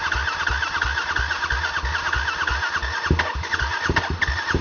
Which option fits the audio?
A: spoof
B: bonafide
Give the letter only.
B